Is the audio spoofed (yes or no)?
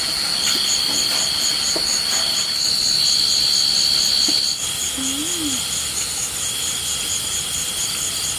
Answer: no